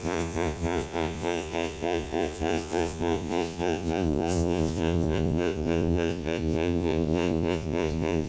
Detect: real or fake fake